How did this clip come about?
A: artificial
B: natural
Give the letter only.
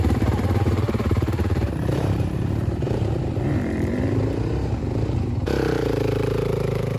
A